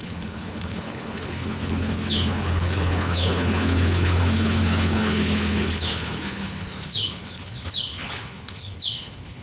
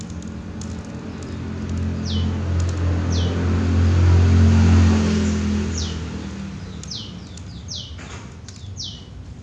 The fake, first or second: first